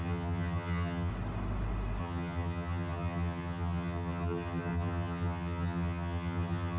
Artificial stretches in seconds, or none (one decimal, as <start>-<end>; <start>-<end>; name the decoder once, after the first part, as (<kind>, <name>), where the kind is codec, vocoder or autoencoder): 0.0-1.1 (vocoder, HiFi-GAN); 2.0-6.8

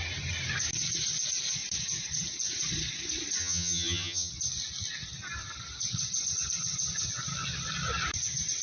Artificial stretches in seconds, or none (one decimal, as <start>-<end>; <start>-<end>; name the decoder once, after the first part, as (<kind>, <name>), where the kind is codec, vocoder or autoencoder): 3.4-4.3 (vocoder, HiFi-GAN)

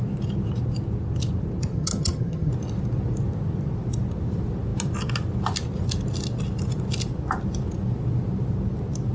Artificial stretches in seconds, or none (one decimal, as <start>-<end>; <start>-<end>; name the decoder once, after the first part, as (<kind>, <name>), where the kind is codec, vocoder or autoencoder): 1.7-2.5 (vocoder, HiFi-GAN)

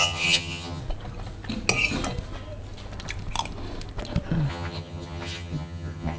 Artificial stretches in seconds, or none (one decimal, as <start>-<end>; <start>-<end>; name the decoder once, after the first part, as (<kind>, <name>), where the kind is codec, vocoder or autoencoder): 0.0-0.8 (vocoder, HiFi-GAN); 4.5-6.2

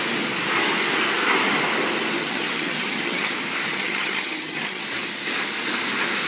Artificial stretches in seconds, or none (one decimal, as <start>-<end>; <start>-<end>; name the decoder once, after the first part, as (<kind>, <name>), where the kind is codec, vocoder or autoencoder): 2.2-3.3 (vocoder, HiFi-GAN); 3.7-4.8

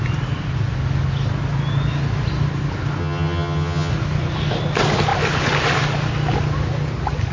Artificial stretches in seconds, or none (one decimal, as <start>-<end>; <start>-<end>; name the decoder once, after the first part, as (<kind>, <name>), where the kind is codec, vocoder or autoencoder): 3.0-3.9 (vocoder, HiFi-GAN)

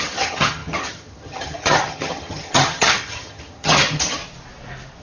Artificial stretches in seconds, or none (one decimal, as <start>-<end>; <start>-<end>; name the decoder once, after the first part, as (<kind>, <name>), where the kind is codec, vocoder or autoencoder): 0.0-4.2 (vocoder, HiFi-GAN)